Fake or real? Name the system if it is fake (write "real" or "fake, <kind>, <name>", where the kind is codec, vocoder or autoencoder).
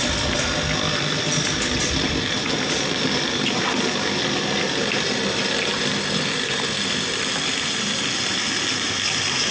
real